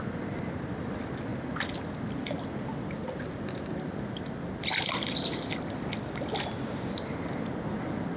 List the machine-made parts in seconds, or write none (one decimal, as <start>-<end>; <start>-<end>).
none

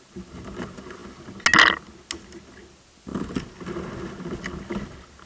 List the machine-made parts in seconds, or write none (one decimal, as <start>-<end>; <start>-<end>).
none